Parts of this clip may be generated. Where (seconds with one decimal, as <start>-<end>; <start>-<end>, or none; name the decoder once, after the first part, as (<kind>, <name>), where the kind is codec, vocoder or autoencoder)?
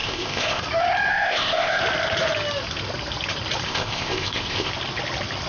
0.0-0.6 (codec, ZipCodec); 1.1-1.8; 3.7-4.7